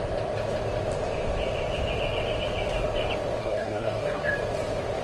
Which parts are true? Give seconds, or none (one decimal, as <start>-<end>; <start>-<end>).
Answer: 0.0-3.4; 4.3-5.0